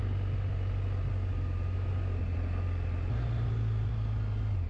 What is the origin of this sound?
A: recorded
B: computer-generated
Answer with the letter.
A